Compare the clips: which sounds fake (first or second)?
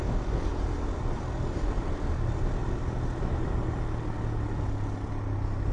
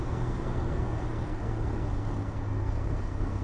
second